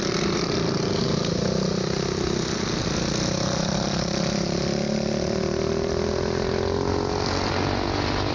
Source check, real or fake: real